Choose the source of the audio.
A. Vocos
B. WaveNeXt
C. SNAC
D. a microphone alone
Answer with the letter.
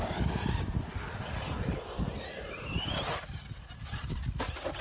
D